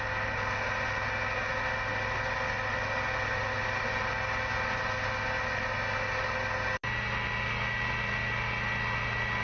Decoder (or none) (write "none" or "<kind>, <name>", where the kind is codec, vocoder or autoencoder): none